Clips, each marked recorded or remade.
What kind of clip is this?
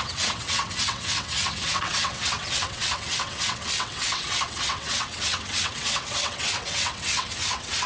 remade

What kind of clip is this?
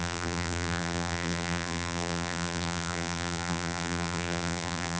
remade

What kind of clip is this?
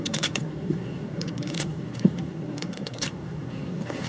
remade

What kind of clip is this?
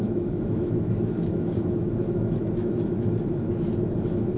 remade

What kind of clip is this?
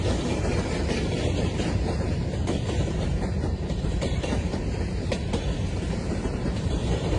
remade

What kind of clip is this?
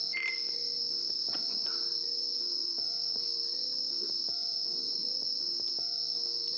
remade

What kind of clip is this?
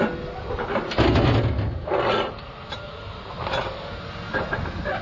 recorded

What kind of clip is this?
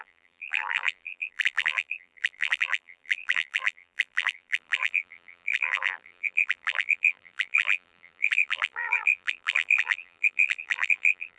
remade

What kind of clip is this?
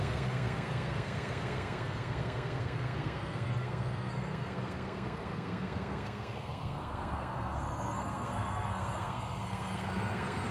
remade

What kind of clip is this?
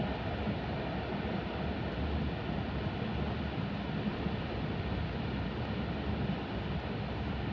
recorded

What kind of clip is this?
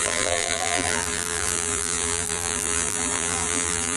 remade